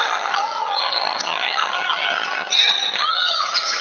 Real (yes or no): no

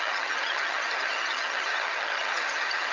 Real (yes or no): no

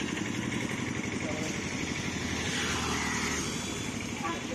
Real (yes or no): yes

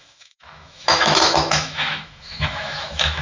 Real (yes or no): no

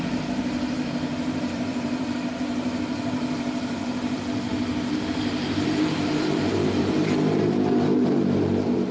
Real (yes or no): no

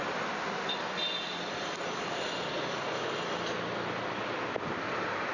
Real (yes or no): yes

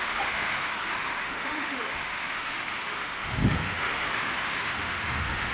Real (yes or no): no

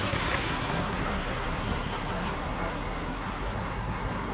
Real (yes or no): no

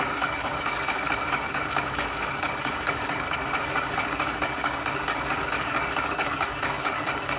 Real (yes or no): no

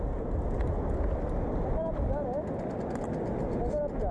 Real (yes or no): yes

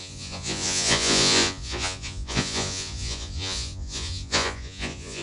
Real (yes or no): no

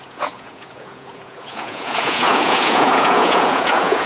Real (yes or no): no